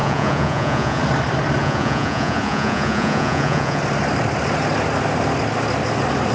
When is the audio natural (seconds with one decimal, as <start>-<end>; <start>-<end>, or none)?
1.0-1.6; 3.8-6.3